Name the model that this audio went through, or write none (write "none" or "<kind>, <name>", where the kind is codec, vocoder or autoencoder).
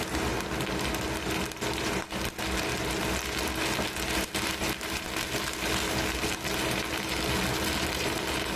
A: none